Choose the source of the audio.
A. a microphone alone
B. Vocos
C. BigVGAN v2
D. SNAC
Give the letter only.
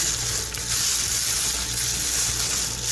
A